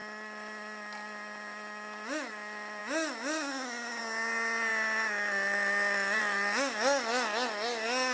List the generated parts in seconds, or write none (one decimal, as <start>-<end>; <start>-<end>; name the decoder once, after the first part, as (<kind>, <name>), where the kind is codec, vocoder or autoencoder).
none